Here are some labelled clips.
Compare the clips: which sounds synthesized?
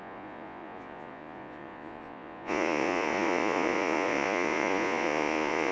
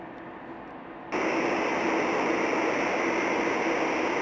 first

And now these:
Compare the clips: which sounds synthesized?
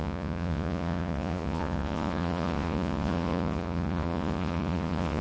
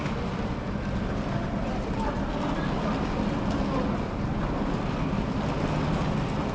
first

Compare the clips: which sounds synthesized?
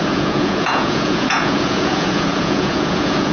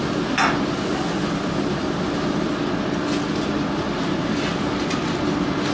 first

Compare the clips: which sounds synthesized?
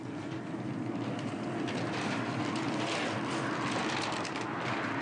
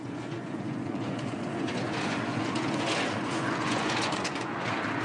second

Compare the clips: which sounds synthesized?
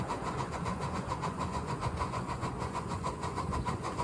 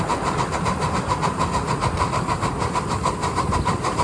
first